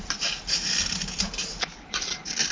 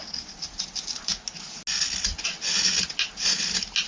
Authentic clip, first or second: second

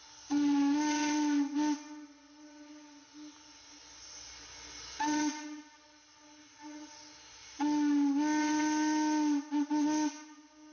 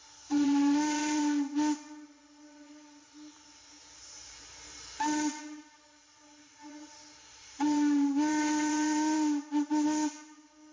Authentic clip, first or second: first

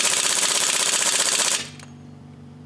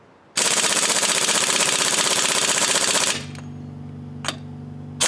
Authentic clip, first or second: second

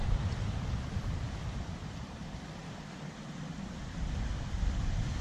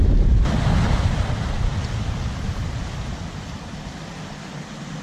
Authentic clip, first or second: second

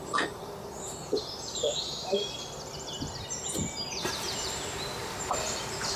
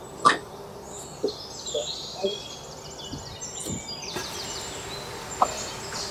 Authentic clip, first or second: second